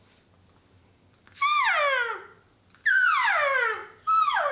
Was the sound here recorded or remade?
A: recorded